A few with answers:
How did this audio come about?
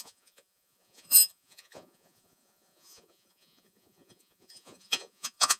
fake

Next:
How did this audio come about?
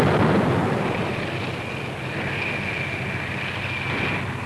real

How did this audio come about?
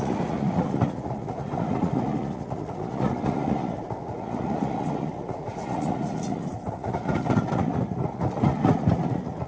fake